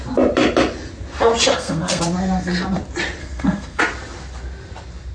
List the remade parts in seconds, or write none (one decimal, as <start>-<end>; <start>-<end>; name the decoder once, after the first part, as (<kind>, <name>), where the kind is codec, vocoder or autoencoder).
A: 1.5-2.0 (codec, SNAC); 3.2-3.8